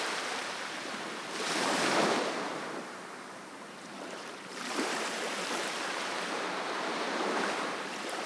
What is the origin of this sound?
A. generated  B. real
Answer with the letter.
A